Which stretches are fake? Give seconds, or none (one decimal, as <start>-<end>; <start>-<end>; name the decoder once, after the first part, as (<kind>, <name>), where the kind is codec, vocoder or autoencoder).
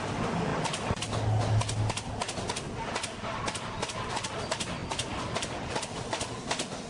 none